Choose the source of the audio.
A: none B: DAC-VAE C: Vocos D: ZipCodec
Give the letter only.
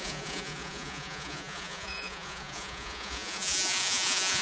C